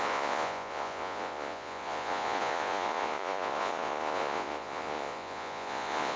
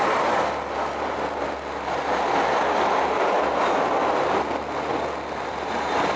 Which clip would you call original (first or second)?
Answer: second